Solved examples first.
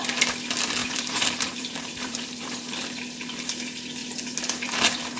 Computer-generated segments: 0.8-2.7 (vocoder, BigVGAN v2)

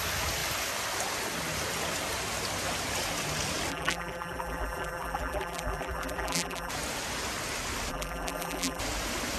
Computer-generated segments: 3.7-6.7 (vocoder, BigVGAN v2); 7.9-8.8

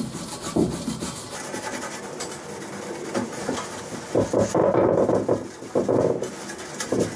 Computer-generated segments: none

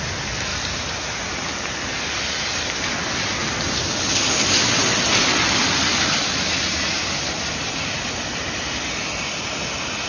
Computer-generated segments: 0.5-1.4 (vocoder, BigVGAN v2)